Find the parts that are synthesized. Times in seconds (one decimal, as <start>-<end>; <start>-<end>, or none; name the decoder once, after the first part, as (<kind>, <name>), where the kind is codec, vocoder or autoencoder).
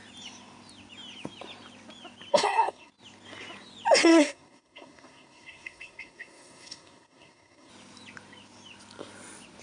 2.3-2.9 (codec, SNAC); 4.1-7.7